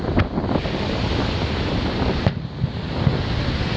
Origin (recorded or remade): recorded